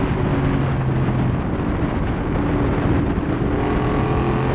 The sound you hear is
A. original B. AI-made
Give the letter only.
A